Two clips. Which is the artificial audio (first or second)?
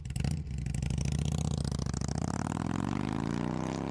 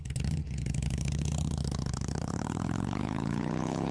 second